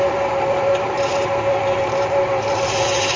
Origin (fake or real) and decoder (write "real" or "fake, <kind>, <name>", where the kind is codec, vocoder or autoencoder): fake, vocoder, BigVGAN v2